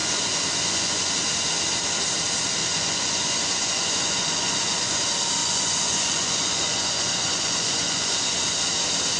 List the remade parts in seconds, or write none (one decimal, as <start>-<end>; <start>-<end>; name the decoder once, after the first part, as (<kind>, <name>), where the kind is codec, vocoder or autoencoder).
0.0-1.1 (vocoder, Vocos); 2.6-5.0; 5.4-8.7